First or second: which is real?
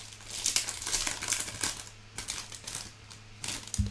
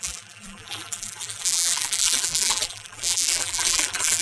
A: first